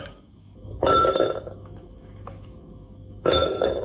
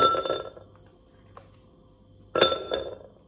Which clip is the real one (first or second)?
second